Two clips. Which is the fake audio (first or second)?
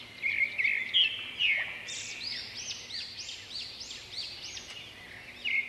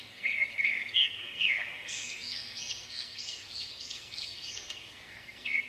second